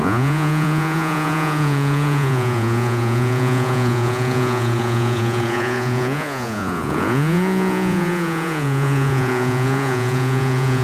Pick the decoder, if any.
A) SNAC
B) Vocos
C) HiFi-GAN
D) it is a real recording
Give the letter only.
B